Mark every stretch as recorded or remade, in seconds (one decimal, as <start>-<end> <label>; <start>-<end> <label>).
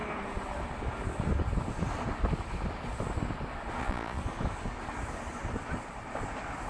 0.0-3.8 recorded; 3.8-4.2 remade; 4.2-6.7 recorded